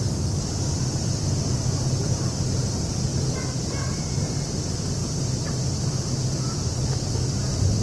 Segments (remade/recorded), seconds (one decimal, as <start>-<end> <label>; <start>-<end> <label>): 0.0-7.8 remade